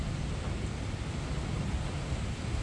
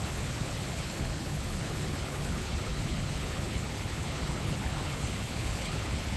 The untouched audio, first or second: first